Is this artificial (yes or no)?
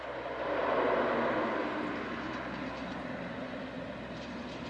no